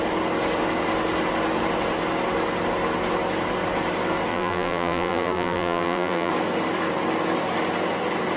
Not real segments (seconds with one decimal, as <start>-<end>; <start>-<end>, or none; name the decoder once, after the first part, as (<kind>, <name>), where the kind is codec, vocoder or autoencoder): 4.3-6.3 (vocoder, BigVGAN v2)